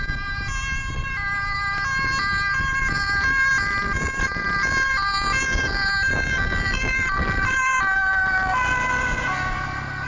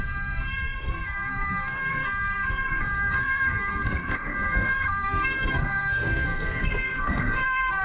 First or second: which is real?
first